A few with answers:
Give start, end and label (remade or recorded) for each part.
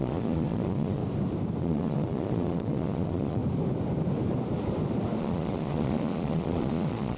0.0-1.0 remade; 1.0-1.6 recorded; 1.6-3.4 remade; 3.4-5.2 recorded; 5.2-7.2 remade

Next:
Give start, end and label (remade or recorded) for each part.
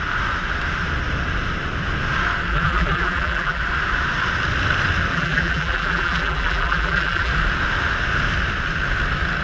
0.0-2.5 recorded; 2.5-3.6 remade; 3.6-5.1 recorded; 5.1-7.3 remade; 7.3-9.4 recorded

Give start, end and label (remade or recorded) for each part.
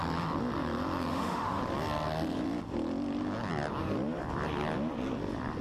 0.0-1.1 recorded; 1.1-1.6 remade; 1.6-5.6 recorded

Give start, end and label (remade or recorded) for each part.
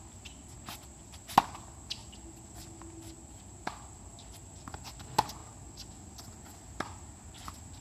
0.0-7.8 recorded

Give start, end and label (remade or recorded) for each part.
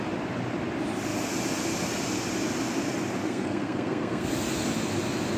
0.0-3.2 recorded; 3.2-4.3 remade; 4.3-5.4 recorded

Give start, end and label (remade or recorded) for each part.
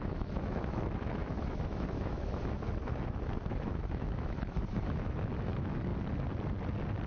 0.0-5.9 remade; 5.9-7.1 recorded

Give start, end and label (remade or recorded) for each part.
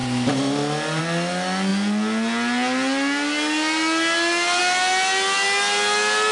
0.0-6.3 recorded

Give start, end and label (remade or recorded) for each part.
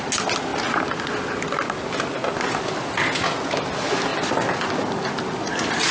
0.0-4.1 recorded; 4.1-5.9 remade